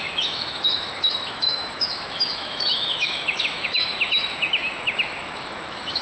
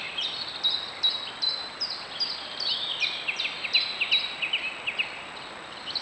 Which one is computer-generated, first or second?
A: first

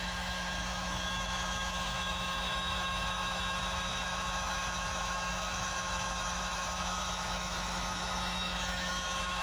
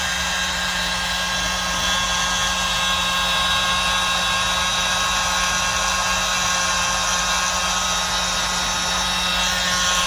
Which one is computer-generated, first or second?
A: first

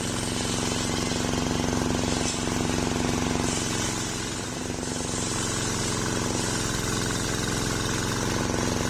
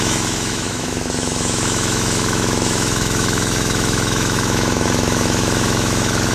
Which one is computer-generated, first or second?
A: second